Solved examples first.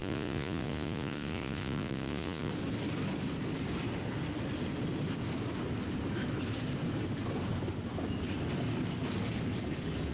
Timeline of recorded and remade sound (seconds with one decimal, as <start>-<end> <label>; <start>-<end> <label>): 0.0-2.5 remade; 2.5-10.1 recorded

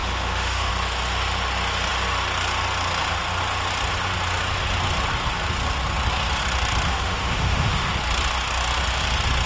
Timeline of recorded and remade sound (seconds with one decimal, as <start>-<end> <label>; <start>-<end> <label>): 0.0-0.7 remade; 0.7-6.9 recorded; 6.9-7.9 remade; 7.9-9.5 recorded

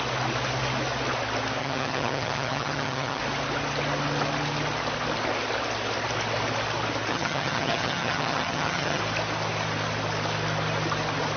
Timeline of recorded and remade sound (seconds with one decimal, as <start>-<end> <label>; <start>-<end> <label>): 0.0-1.6 recorded; 1.6-3.2 remade; 3.2-7.1 recorded; 7.1-9.0 remade; 9.0-11.4 recorded